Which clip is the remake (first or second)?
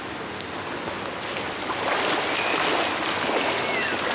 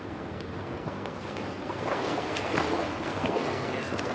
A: second